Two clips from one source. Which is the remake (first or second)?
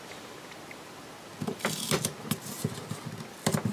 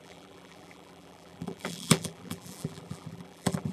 second